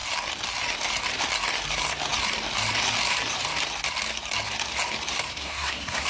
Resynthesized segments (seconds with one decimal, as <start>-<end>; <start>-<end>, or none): 5.3-6.1